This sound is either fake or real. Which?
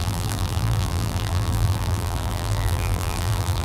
fake